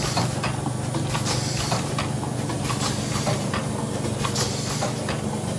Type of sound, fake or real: real